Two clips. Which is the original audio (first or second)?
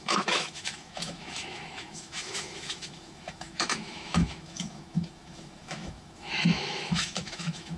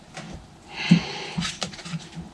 second